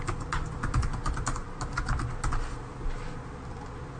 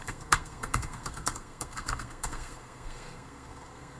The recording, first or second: first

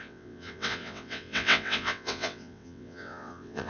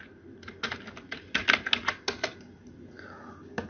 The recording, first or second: second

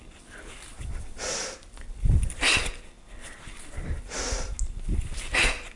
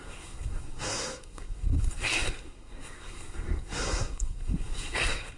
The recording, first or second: first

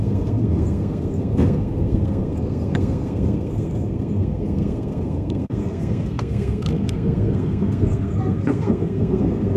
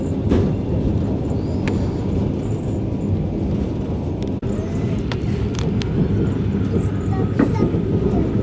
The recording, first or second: second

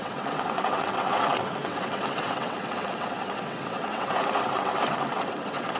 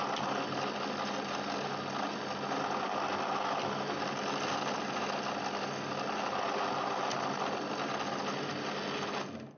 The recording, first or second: second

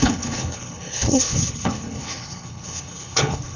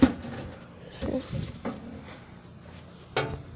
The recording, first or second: second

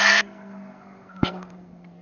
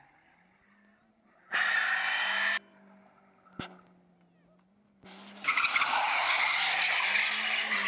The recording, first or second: second